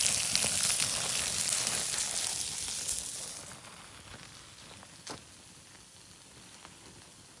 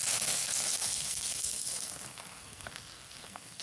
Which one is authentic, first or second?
first